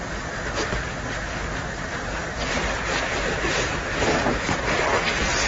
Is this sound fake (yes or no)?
no